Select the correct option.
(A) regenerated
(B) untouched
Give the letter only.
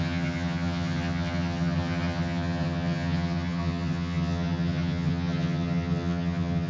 A